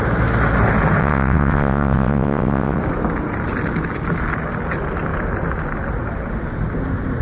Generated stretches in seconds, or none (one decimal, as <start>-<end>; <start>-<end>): 1.0-2.8